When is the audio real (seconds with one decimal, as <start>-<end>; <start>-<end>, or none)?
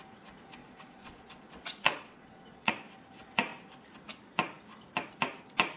0.0-0.6; 2.7-5.8